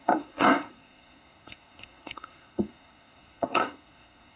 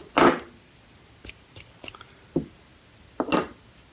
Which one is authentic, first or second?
second